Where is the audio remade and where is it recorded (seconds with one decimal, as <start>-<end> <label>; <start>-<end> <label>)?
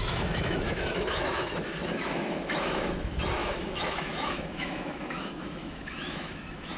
0.0-6.8 remade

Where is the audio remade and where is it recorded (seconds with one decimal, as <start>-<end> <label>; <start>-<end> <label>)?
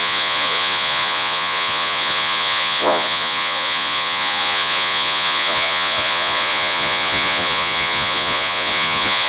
0.0-9.3 remade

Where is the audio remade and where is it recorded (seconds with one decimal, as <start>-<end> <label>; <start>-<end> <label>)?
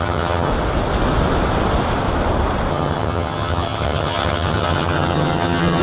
0.0-0.5 remade; 0.5-2.7 recorded; 2.7-5.8 remade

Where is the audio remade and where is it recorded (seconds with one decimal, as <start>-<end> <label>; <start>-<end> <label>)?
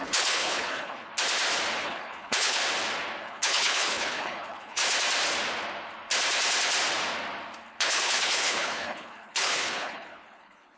0.0-1.1 remade; 1.1-1.8 recorded; 1.8-2.6 remade; 2.6-3.2 recorded; 3.2-4.8 remade; 4.8-7.7 recorded; 7.7-10.8 remade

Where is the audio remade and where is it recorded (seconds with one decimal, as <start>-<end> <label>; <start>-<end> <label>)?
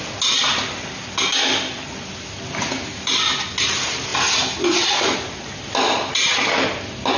0.0-7.2 recorded